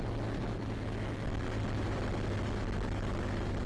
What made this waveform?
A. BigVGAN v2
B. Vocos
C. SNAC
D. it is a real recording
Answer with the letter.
D